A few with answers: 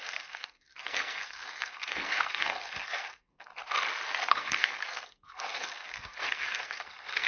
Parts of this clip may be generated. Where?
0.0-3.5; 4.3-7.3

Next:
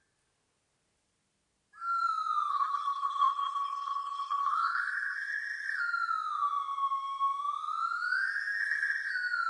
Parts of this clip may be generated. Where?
2.5-5.8; 8.6-9.1